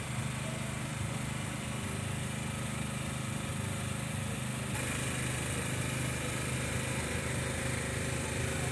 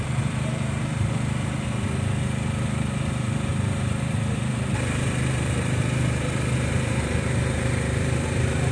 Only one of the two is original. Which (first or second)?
first